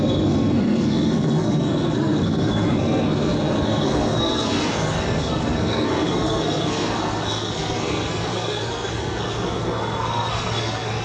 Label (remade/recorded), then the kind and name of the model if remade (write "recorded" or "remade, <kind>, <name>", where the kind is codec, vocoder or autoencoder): remade, codec, SNAC